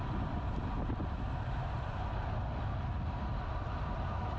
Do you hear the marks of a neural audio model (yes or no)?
no